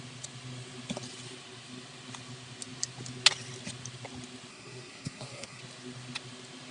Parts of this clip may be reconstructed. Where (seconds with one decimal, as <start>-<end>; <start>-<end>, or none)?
4.5-5.6